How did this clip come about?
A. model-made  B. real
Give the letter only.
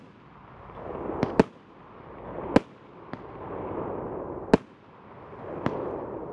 B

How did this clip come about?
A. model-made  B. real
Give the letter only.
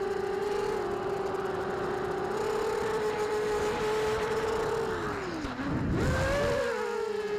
B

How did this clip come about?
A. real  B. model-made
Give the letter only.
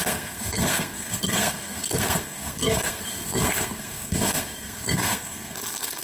B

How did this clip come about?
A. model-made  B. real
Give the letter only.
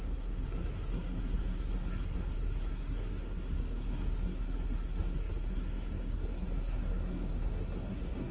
A